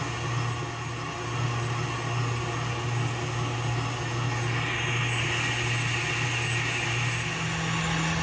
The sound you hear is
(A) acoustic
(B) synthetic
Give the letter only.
A